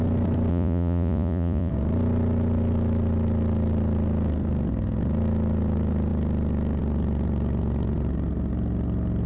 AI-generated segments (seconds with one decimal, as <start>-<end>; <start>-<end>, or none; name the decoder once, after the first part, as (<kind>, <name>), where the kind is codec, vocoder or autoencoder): 0.5-1.7 (vocoder, Vocos)